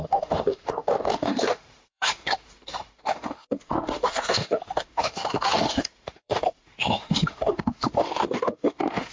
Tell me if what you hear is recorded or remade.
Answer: remade